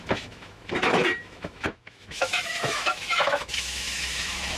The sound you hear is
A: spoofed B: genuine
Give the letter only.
A